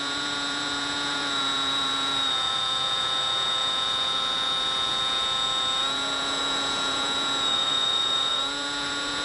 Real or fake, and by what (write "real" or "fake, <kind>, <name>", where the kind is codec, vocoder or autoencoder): fake, vocoder, Vocos